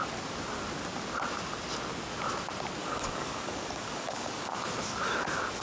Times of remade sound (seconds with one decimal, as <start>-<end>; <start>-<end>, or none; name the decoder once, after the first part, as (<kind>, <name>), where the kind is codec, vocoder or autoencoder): 2.8-4.7 (codec, DAC)